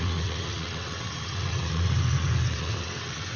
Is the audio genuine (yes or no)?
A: no